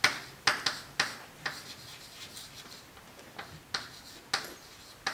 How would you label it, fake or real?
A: real